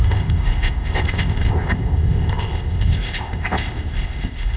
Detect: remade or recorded remade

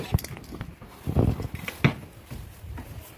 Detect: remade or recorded recorded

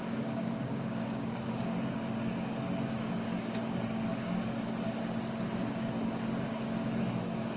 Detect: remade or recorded remade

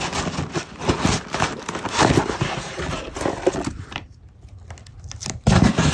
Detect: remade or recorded recorded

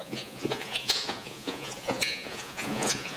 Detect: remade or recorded remade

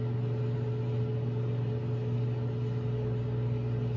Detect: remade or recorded recorded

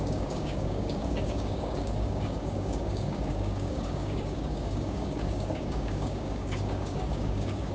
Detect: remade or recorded remade